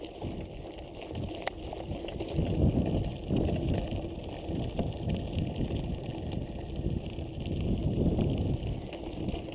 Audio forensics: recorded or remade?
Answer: recorded